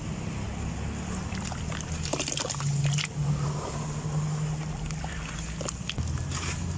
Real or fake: real